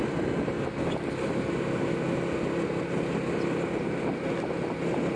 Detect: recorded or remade recorded